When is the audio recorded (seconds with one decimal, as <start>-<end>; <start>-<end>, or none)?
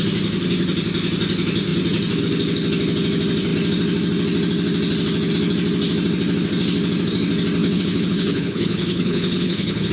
0.0-7.6